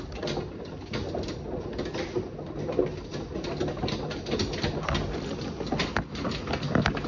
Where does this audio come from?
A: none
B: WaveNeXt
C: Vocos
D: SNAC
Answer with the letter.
A